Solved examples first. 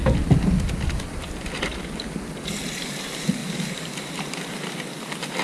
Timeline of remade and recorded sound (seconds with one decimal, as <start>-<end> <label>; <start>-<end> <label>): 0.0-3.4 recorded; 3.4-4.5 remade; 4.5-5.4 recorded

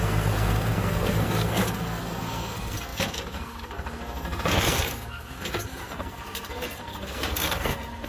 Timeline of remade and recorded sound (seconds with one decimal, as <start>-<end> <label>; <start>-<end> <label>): 0.0-8.1 remade

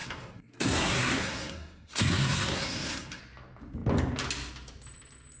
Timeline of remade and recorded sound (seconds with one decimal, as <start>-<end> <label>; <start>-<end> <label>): 0.0-3.2 remade; 3.2-5.4 recorded

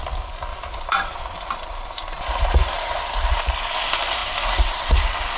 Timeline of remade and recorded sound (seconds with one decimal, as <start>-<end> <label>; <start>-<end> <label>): 0.0-0.5 recorded; 0.5-3.7 remade; 3.7-4.2 recorded; 4.2-4.9 remade; 4.9-5.4 recorded

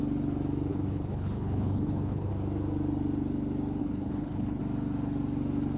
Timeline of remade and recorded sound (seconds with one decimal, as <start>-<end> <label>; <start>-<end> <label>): 0.0-0.7 recorded; 0.7-2.3 remade; 2.3-3.8 recorded; 3.8-4.6 remade; 4.6-5.8 recorded

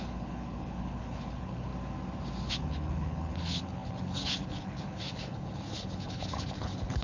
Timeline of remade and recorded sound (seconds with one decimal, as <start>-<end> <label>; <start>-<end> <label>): 0.0-1.7 remade; 1.7-2.5 recorded; 2.5-7.0 remade